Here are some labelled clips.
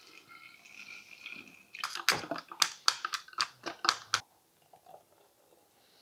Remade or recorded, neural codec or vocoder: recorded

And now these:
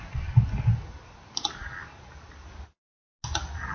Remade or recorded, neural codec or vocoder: recorded